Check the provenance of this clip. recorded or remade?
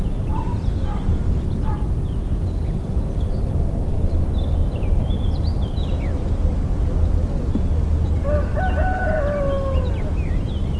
recorded